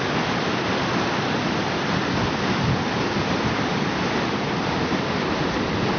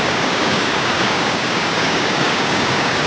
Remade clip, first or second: second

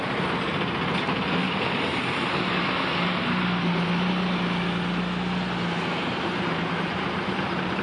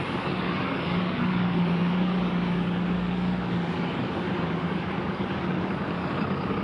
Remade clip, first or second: second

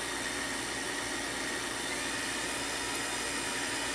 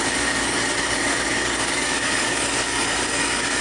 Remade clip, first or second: second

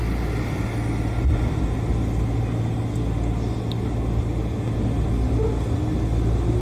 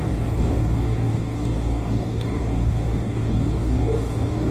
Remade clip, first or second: second